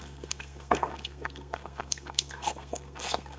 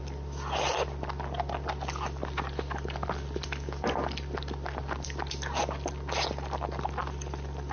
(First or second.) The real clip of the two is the second